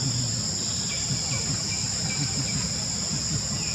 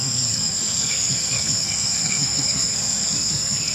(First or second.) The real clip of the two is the first